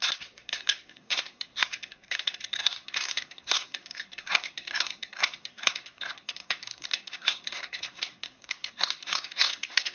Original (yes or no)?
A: no